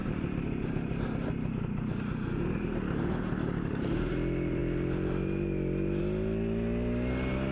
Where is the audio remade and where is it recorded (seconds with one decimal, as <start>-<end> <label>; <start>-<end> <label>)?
0.0-7.5 recorded